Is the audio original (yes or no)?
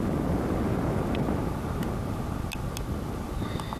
yes